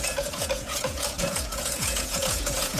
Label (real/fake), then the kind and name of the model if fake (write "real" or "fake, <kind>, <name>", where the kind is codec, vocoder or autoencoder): fake, vocoder, Vocos